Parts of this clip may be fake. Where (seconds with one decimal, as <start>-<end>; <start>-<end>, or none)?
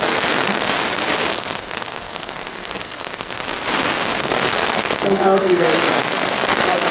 0.0-0.7; 1.3-3.4; 4.2-6.9